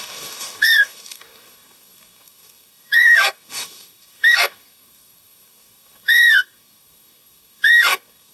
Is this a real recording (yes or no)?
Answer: no